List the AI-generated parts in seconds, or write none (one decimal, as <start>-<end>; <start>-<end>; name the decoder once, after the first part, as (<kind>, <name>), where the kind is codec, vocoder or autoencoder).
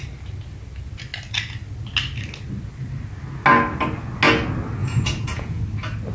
4.8-5.6 (vocoder, Vocos)